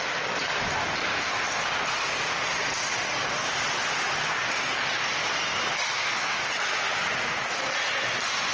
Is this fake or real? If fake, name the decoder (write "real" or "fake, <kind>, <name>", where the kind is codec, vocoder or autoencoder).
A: real